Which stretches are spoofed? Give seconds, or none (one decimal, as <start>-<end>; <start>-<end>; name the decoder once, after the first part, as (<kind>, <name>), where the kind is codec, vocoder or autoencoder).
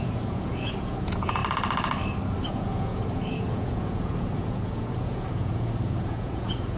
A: 0.0-1.4 (vocoder, Vocos); 2.5-6.8